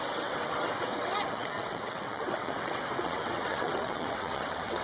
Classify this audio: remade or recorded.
remade